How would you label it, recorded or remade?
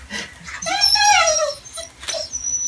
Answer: recorded